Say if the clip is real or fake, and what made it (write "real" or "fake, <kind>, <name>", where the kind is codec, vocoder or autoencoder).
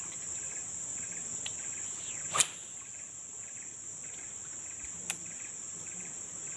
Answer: real